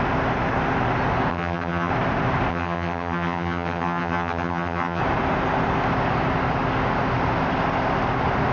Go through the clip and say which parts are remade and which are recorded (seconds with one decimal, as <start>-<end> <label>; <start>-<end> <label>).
0.0-1.3 recorded; 1.3-1.9 remade; 1.9-2.5 recorded; 2.5-5.0 remade; 5.0-8.5 recorded

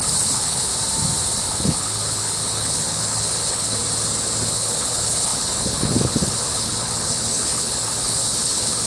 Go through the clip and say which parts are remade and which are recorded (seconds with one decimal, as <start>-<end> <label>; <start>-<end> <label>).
0.0-0.7 remade; 0.7-1.4 recorded; 1.4-3.8 remade; 3.8-4.5 recorded; 4.5-8.9 remade

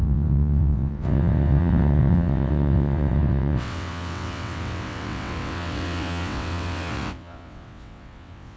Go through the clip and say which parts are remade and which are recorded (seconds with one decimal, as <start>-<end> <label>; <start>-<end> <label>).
0.0-8.6 remade

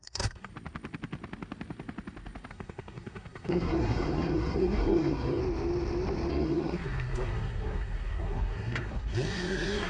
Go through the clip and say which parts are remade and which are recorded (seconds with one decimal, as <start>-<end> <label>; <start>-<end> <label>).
0.0-0.5 remade; 0.5-2.5 recorded; 2.5-5.4 remade; 5.4-6.3 recorded; 6.3-9.9 remade

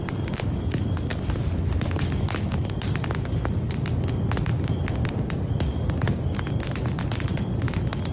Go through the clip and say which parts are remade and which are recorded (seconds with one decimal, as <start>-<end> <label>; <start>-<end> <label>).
0.0-8.1 recorded

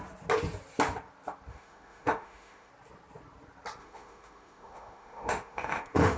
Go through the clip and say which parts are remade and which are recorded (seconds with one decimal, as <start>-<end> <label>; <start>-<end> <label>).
0.0-1.5 recorded; 1.5-2.7 remade; 2.7-3.8 recorded; 3.8-6.2 remade

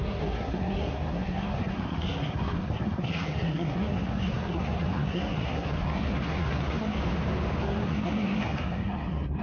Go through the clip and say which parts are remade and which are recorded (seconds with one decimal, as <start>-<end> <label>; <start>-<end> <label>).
0.0-7.0 remade; 7.0-7.6 recorded; 7.6-9.4 remade

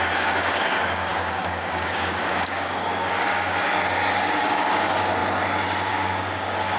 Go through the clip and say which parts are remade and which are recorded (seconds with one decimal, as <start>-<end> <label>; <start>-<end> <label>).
0.0-5.2 remade; 5.2-5.9 recorded; 5.9-6.8 remade